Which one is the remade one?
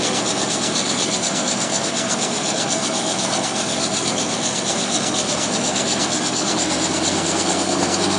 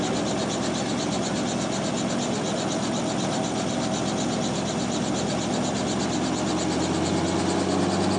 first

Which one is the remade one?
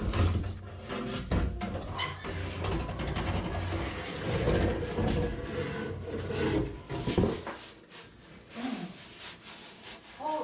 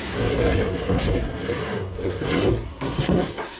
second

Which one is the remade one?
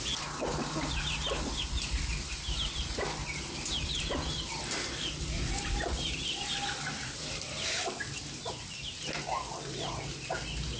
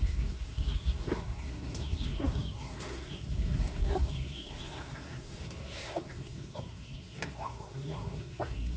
second